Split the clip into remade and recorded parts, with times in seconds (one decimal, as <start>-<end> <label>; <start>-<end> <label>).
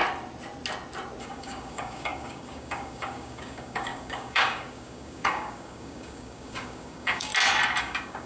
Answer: 0.0-1.2 recorded; 1.2-7.3 remade; 7.3-7.8 recorded; 7.8-8.3 remade